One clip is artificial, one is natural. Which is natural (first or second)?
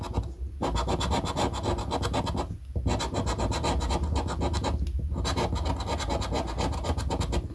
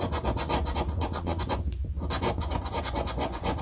first